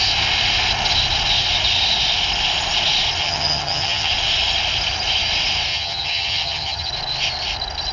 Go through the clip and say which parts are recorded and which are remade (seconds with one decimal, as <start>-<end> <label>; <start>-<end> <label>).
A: 0.0-3.2 recorded; 3.2-4.1 remade; 4.1-5.7 recorded; 5.7-6.9 remade; 6.9-7.9 recorded